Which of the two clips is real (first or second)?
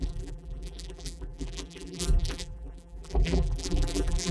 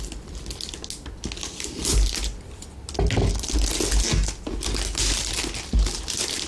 second